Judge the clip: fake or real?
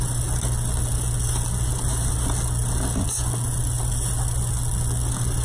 real